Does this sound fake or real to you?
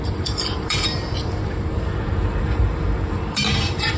fake